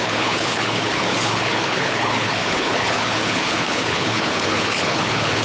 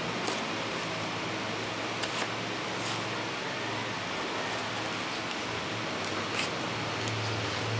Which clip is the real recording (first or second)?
second